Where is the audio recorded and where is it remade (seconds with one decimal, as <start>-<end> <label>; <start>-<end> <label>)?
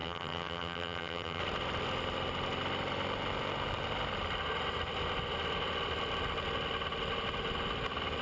0.0-1.4 remade; 1.4-8.2 recorded